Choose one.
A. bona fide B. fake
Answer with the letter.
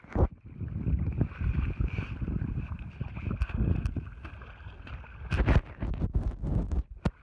A